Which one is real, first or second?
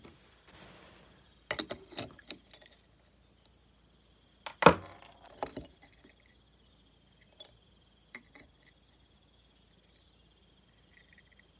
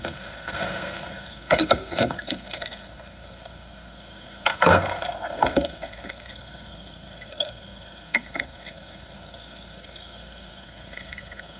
first